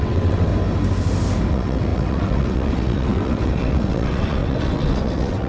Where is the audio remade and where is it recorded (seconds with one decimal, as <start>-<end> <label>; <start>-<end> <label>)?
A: 0.0-0.5 remade; 0.5-1.5 recorded; 1.5-5.5 remade